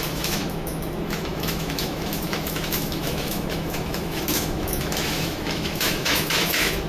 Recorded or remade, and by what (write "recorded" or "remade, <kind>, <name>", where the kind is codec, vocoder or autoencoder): remade, autoencoder, DAC-VAE